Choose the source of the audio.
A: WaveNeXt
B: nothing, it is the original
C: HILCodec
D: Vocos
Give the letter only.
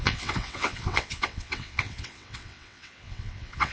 A